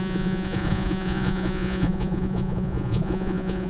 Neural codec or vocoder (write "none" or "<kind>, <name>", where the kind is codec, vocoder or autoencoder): vocoder, Vocos